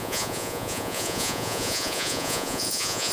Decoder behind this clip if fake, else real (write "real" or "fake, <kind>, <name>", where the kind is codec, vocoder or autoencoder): fake, vocoder, Vocos